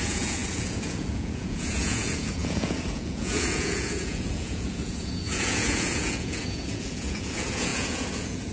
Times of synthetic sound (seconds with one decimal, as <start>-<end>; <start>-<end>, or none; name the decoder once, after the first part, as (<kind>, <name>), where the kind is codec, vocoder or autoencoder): 0.0-8.5 (vocoder, Vocos)